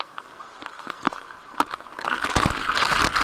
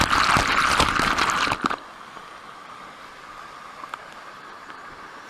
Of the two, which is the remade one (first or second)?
first